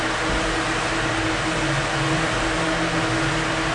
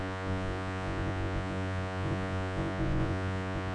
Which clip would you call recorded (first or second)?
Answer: first